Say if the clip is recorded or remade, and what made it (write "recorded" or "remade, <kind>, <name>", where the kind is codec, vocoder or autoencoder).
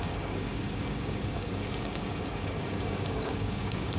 remade, codec, DAC